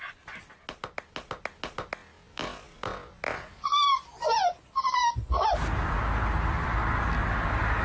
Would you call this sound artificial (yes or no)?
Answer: no